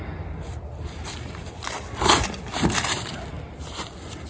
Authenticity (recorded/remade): recorded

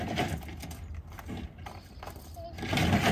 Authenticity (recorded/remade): recorded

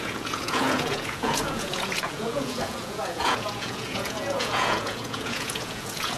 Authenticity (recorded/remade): remade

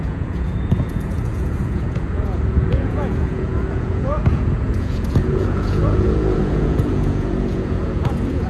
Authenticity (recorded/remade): remade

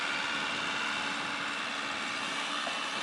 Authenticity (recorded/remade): recorded